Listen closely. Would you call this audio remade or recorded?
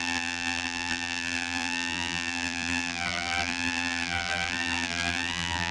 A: remade